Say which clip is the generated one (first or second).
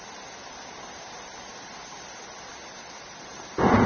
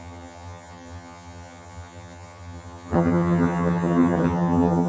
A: second